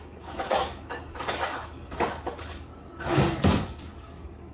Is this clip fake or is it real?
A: fake